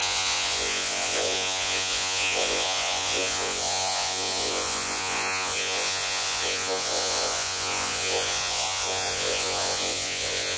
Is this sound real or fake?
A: fake